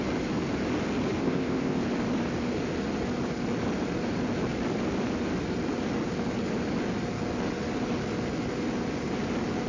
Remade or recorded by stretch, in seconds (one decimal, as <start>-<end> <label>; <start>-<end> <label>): 0.0-1.2 recorded; 1.2-1.8 remade; 1.8-9.7 recorded